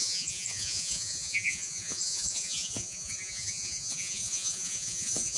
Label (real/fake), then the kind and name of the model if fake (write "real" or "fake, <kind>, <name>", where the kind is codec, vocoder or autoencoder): fake, vocoder, Vocos